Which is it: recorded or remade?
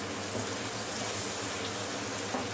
recorded